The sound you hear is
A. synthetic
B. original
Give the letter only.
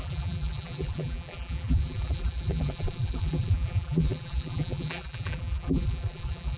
A